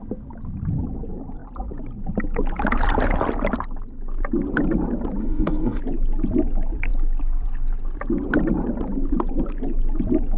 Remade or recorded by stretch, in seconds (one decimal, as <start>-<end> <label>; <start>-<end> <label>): 0.0-5.2 recorded; 5.2-5.8 remade; 5.8-10.4 recorded